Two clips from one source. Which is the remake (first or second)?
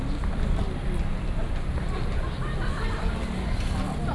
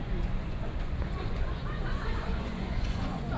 second